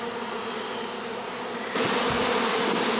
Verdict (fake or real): real